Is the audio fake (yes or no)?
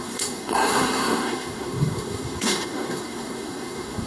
yes